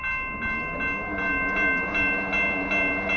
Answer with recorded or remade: recorded